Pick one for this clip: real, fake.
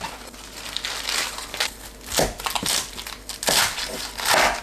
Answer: real